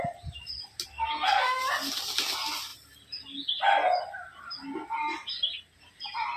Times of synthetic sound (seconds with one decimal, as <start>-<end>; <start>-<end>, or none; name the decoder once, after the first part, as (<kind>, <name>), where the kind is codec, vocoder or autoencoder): 0.9-1.6 (codec, SNAC)